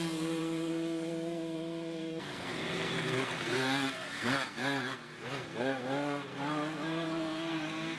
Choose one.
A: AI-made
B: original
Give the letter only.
A